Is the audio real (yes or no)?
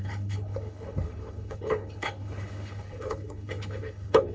no